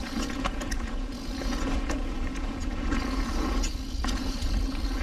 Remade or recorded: remade